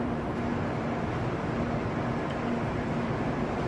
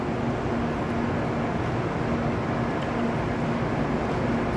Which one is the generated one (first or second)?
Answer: first